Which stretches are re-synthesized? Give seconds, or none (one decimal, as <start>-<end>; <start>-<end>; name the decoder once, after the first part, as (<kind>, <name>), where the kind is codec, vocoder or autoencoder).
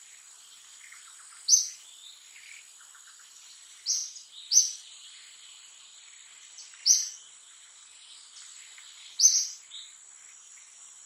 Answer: 5.5-7.8 (vocoder, BigVGAN v2)